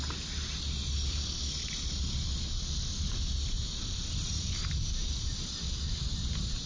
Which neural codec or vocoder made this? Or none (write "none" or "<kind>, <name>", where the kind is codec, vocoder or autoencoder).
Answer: none